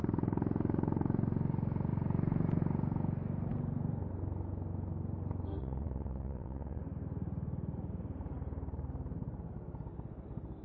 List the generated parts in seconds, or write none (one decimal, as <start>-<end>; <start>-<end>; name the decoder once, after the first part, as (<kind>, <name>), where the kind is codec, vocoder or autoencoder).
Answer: 5.6-6.8 (vocoder, Vocos)